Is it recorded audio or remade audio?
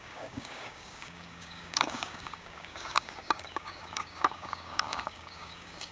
remade